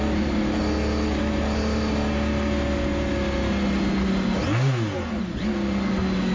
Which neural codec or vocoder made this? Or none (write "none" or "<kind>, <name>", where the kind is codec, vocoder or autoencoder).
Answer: none